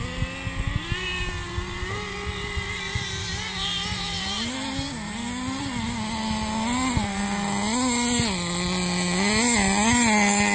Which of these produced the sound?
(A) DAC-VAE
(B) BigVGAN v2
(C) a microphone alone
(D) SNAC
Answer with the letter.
C